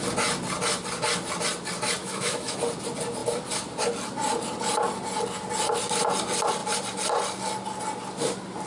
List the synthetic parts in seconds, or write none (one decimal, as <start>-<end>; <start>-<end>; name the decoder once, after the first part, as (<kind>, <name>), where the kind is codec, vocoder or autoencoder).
2.0-2.6 (autoencoder, DAC-VAE)